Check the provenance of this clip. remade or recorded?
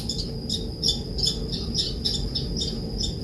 recorded